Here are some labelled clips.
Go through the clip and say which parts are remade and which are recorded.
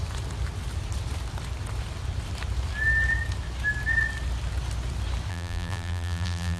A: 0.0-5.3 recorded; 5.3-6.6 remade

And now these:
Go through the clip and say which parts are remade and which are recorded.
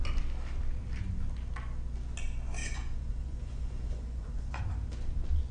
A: 0.0-2.6 recorded; 2.6-4.6 remade; 4.6-5.5 recorded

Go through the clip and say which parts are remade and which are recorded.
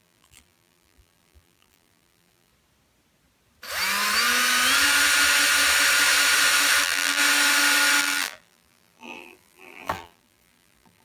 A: 0.0-2.5 remade; 2.5-6.8 recorded; 6.8-7.2 remade; 7.2-8.0 recorded; 8.0-11.0 remade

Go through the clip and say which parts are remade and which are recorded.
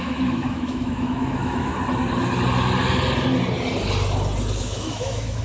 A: 0.0-1.7 remade; 1.7-4.6 recorded; 4.6-5.4 remade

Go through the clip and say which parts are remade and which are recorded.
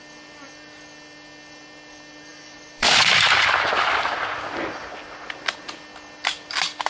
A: 0.0-2.3 recorded; 2.3-3.4 remade; 3.4-6.9 recorded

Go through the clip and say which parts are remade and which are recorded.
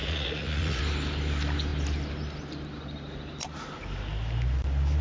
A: 0.0-0.8 remade; 0.8-5.0 recorded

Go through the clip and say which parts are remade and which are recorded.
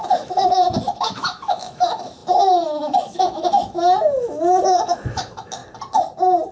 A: 0.0-5.6 remade; 5.6-6.5 recorded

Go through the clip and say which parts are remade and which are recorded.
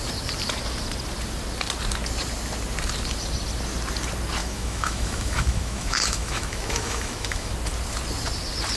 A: 0.0-4.4 recorded; 4.4-7.5 remade; 7.5-8.8 recorded